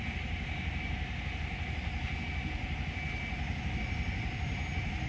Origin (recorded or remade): recorded